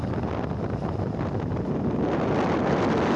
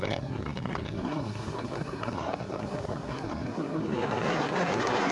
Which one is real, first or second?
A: first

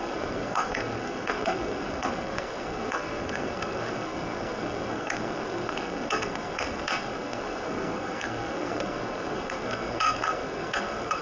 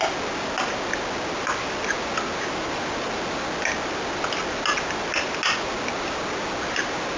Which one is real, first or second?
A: second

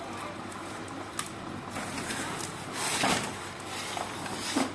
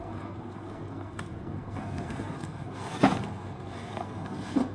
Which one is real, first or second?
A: first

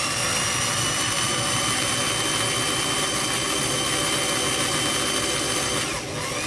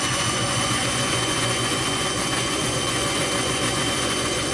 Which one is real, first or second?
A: first